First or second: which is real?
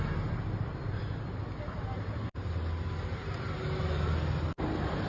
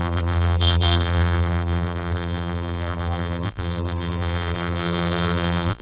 first